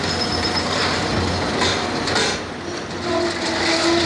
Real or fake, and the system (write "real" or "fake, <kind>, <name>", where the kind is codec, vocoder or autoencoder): real